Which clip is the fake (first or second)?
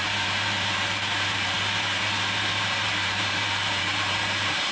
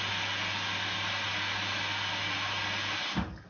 first